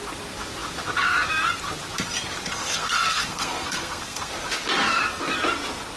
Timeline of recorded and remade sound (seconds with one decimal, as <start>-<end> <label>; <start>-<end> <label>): 0.0-2.6 recorded; 2.6-4.3 remade; 4.3-6.0 recorded

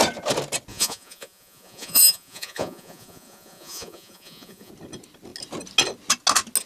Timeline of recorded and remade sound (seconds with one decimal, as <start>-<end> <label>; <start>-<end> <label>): 0.0-0.7 recorded; 0.7-4.7 remade; 4.7-6.7 recorded